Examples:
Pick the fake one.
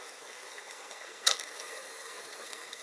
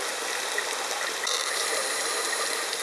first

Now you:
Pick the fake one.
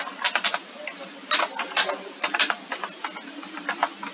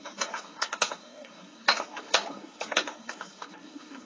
second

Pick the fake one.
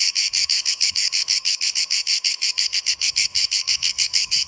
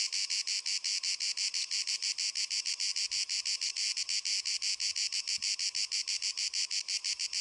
first